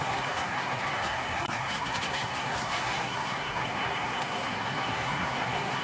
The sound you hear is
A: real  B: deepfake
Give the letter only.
B